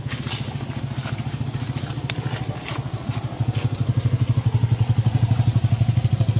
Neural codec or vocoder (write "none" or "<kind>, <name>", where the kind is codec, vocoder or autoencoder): none